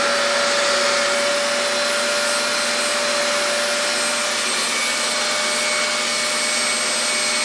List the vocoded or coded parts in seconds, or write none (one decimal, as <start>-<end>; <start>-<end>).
none